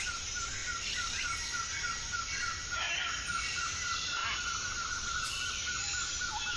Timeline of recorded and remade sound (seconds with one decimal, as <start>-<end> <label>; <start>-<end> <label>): 0.0-6.6 recorded